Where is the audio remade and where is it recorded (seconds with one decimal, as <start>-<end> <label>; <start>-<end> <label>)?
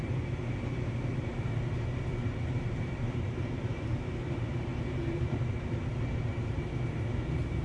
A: 0.0-6.7 remade; 6.7-7.6 recorded